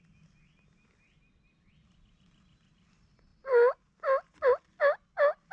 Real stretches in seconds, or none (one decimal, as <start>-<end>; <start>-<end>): 0.0-5.5